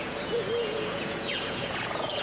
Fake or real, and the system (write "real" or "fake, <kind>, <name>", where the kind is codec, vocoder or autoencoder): fake, vocoder, Vocos